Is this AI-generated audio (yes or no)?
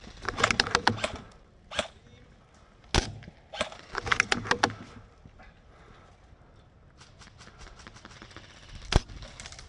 no